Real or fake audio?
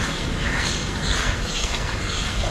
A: fake